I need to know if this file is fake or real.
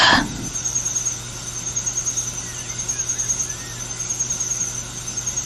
real